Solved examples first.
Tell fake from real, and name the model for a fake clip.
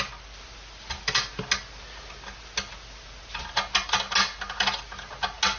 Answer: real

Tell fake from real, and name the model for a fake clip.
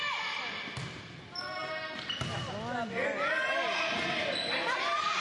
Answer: real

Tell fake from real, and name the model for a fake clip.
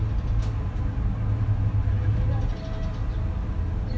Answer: real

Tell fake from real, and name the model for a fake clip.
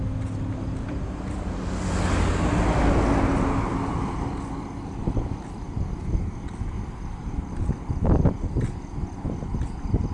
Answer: real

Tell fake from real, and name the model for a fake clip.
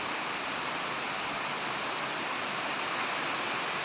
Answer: real